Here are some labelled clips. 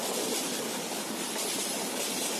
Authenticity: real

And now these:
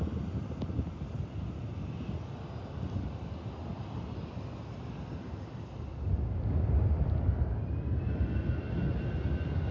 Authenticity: real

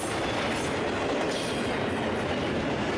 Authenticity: real